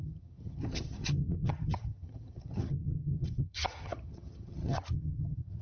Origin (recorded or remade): remade